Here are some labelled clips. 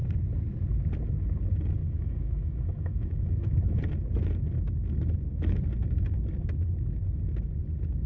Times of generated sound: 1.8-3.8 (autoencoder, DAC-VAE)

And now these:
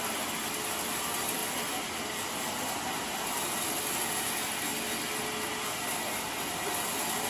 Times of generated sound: none

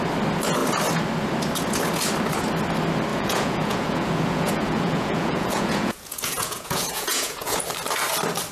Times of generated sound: 3.1-7.6 (vocoder, Vocos)

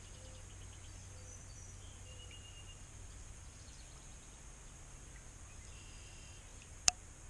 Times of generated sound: 1.4-4.1 (vocoder, BigVGAN v2); 6.5-7.3

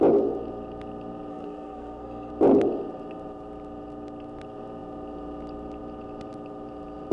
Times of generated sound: 1.3-2.3 (codec, SNAC)